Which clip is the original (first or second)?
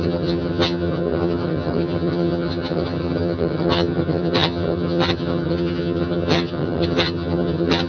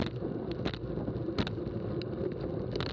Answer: second